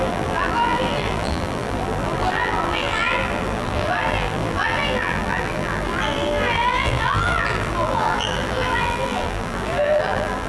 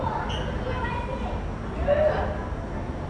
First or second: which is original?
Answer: second